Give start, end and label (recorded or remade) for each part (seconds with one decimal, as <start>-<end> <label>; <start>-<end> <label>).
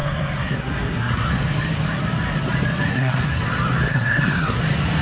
0.0-1.3 remade; 1.3-2.9 recorded; 2.9-3.4 remade; 3.4-3.9 recorded; 3.9-4.6 remade; 4.6-5.0 recorded